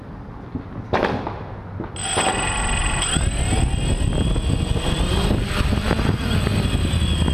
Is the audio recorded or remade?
recorded